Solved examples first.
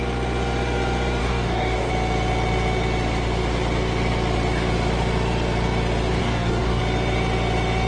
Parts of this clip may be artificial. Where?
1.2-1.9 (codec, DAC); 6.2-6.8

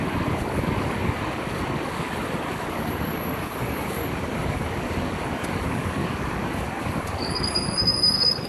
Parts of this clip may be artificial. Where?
0.0-8.5 (codec, DAC)

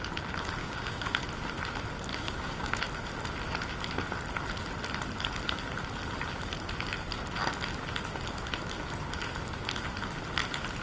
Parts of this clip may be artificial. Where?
0.6-1.2 (codec, DAC); 2.1-2.8